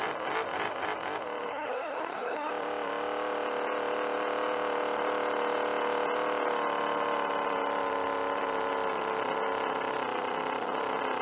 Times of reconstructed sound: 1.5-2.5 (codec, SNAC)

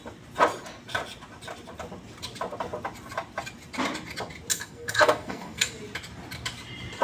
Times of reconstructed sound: 4.5-5.7 (codec, SNAC)

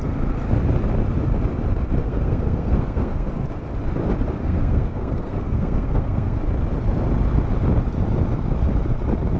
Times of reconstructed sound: 2.0-3.3 (codec, SNAC); 4.4-6.4

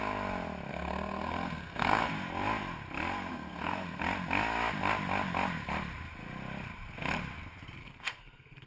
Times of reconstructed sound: 0.7-2.1 (codec, SNAC); 3.3-4.0; 7.8-8.7

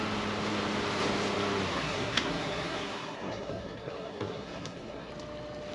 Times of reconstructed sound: 1.7-5.1 (codec, SNAC)